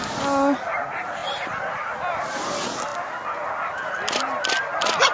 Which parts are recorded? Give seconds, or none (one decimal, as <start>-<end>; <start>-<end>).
0.0-5.1